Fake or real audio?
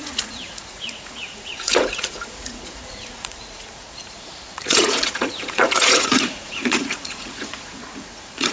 fake